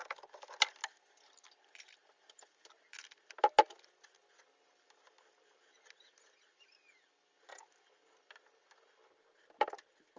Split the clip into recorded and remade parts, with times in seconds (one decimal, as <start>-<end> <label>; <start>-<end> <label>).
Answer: 0.0-10.2 recorded